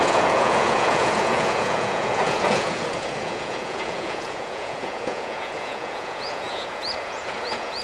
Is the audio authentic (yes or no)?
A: no